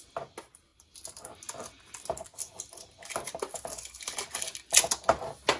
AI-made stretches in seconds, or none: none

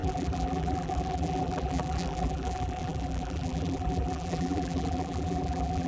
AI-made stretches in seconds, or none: 0.0-5.9 (vocoder, BigVGAN v2)